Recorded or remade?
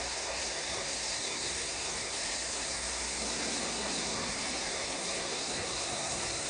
remade